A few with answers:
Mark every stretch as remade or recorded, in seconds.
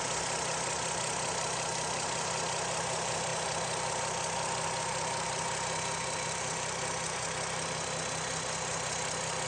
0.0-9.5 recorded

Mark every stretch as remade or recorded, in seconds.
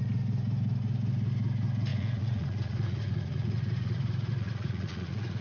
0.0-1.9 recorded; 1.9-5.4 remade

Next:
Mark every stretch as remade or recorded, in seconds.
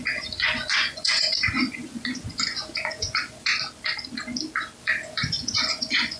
0.0-3.5 remade; 3.5-4.8 recorded; 4.8-6.2 remade